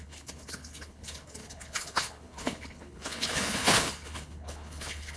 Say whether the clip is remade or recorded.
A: remade